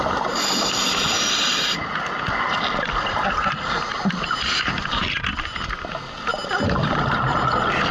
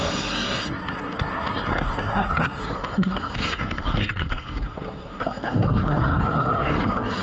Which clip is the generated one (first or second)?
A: second